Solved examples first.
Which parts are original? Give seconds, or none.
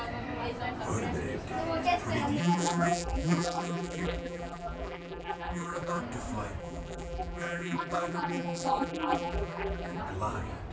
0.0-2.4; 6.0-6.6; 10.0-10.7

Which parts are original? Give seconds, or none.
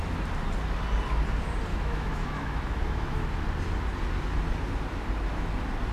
0.0-1.7; 3.4-5.9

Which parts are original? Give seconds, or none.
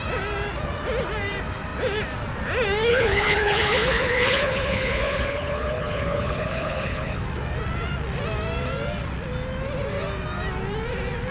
0.0-2.9; 7.2-11.3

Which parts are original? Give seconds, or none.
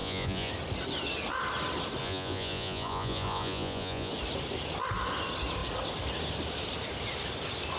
0.5-2.0; 4.1-7.8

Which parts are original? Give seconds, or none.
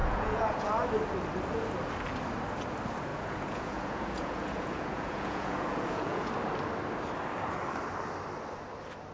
0.7-3.1; 6.3-9.1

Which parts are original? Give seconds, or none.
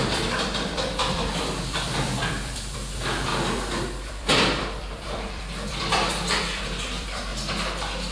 3.3-4.1; 7.3-8.1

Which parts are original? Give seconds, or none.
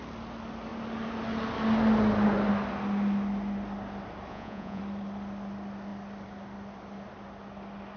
0.0-4.3; 4.8-8.0